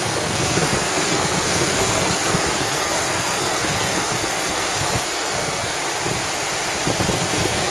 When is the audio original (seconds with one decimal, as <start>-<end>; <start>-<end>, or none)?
5.8-7.1